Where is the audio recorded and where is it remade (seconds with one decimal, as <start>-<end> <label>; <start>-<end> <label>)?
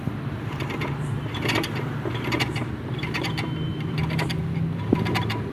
0.0-3.3 remade; 3.3-3.7 recorded; 3.7-4.3 remade; 4.3-5.5 recorded